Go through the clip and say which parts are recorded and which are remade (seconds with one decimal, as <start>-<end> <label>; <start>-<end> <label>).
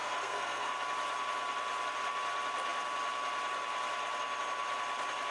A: 0.0-0.7 remade; 0.7-5.3 recorded